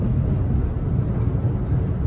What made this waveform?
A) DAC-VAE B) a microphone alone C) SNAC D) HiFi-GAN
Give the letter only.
B